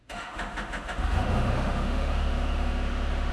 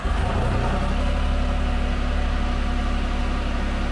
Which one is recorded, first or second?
second